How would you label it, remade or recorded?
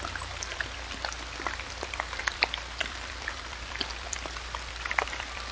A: remade